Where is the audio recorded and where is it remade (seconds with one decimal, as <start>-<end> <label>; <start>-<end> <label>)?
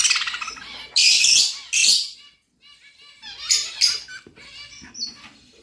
0.0-5.6 recorded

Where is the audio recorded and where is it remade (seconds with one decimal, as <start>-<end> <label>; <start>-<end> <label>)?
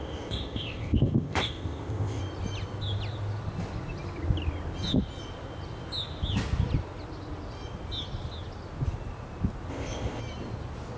0.0-2.2 remade; 2.2-9.7 recorded; 9.7-10.2 remade; 10.2-11.0 recorded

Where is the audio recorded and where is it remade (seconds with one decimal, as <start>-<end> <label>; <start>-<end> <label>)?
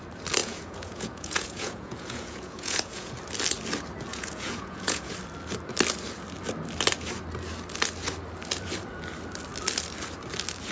0.0-0.4 recorded; 0.4-3.1 remade; 3.1-4.1 recorded; 4.1-5.1 remade; 5.1-10.7 recorded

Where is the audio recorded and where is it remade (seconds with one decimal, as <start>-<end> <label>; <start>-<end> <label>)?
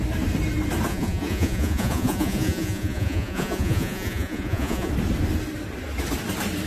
0.0-0.9 recorded; 0.9-4.9 remade; 4.9-6.7 recorded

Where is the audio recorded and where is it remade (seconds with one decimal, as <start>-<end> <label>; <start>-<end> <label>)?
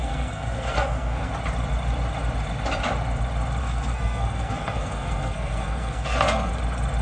0.0-1.3 remade; 1.3-3.6 recorded; 3.6-6.5 remade; 6.5-7.0 recorded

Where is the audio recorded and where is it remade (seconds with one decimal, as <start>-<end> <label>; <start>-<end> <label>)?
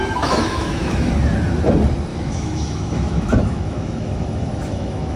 0.0-1.1 remade; 1.1-2.1 recorded; 2.1-5.2 remade